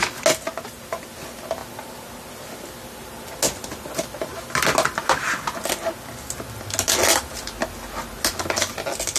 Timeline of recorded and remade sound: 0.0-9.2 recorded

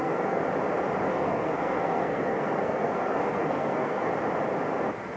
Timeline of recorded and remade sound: 0.0-0.4 remade; 0.4-1.1 recorded; 1.1-4.1 remade; 4.1-5.2 recorded

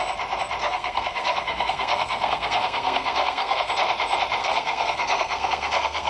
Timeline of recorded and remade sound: 0.0-0.6 recorded; 0.6-3.7 remade; 3.7-4.4 recorded; 4.4-6.1 remade

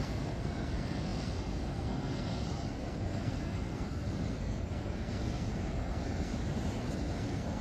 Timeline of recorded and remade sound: 0.0-6.3 remade; 6.3-6.8 recorded; 6.8-7.6 remade

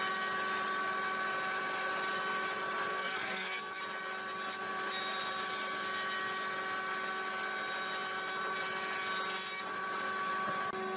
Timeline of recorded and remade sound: 0.0-2.9 recorded; 2.9-3.8 remade; 3.8-11.0 recorded

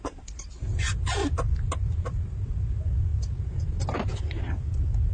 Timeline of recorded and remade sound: 0.0-5.1 recorded

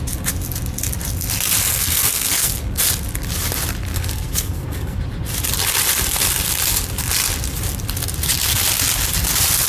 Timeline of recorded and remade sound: 0.0-1.7 recorded; 1.7-2.8 remade; 2.8-3.9 recorded; 3.9-5.0 remade; 5.0-9.7 recorded